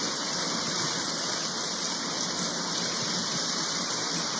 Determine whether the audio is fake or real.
real